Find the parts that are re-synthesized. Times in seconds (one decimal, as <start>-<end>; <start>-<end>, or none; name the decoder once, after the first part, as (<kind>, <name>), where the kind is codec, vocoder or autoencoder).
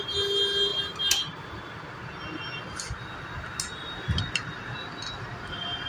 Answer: none